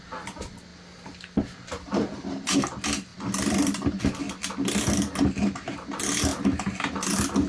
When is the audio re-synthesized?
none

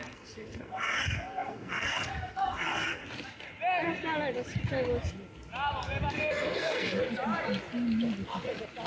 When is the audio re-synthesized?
0.0-3.0; 6.1-7.0